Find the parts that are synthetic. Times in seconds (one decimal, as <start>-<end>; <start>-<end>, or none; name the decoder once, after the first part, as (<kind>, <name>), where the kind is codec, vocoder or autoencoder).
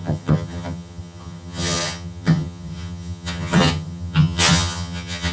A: 0.0-5.3 (vocoder, HiFi-GAN)